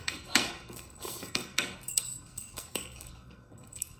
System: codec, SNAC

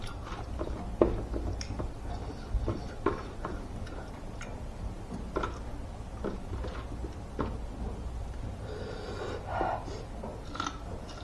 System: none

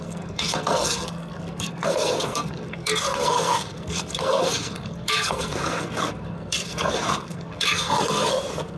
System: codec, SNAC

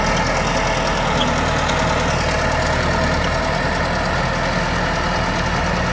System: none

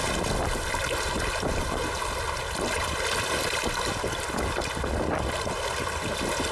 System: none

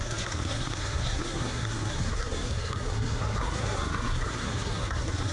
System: codec, SNAC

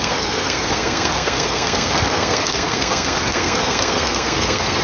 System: codec, SNAC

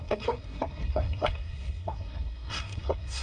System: codec, SNAC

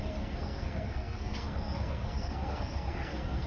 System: codec, SNAC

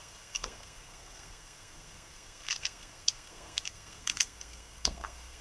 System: codec, SNAC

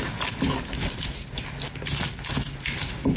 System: none